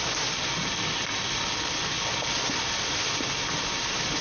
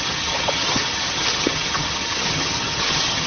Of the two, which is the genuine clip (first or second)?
first